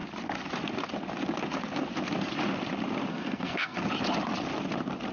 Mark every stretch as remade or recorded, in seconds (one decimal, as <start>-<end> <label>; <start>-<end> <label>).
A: 0.0-3.1 recorded; 3.1-3.8 remade; 3.8-5.1 recorded